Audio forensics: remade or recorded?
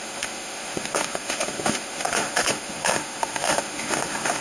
remade